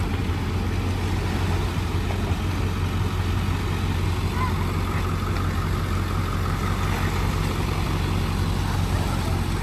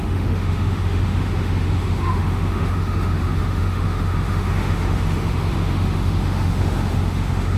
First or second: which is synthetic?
second